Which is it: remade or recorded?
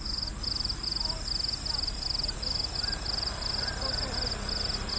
recorded